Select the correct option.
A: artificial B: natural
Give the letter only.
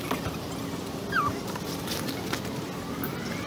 B